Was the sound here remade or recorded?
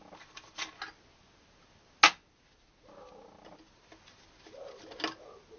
recorded